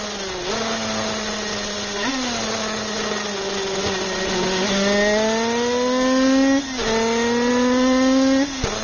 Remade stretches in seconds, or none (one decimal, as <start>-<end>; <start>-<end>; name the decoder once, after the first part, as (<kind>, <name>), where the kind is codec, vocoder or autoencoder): none

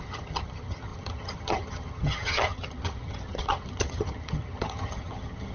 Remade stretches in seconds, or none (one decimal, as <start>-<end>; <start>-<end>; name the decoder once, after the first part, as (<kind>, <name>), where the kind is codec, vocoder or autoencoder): 0.0-5.5 (vocoder, HiFi-GAN)

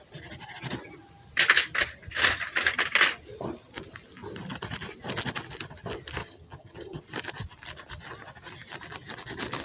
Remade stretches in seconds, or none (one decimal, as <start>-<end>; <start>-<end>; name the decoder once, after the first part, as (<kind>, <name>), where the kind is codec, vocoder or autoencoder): 6.2-7.0 (vocoder, HiFi-GAN)

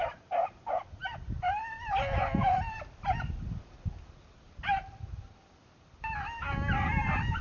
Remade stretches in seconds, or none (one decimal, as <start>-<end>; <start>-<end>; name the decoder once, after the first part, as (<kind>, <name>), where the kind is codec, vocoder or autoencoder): none

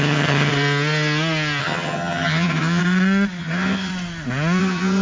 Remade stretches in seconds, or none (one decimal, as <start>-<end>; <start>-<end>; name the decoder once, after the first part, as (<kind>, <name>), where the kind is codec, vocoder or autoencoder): 0.0-0.5 (vocoder, HiFi-GAN); 1.6-2.8; 3.4-3.9; 4.6-5.0

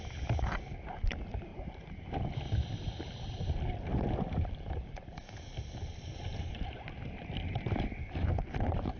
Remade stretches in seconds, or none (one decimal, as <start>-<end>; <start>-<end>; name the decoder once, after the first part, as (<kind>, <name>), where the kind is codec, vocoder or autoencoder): none